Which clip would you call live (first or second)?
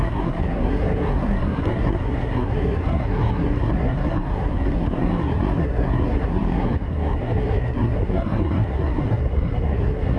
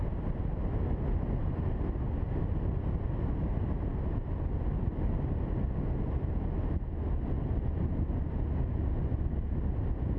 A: second